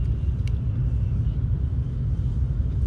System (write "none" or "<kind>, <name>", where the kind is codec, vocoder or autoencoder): none